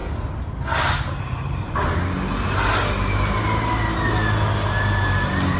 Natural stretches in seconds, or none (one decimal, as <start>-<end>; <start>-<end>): 0.0-5.6